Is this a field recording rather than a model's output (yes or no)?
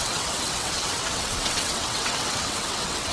no